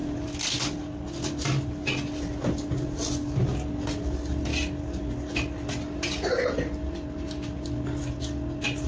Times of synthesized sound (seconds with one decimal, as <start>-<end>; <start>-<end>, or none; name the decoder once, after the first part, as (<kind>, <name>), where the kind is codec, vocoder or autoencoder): none

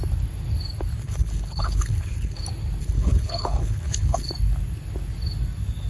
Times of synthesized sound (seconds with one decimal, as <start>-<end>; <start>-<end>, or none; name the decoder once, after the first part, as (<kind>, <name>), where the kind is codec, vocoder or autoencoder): 1.0-2.4 (codec, HILCodec); 2.8-4.3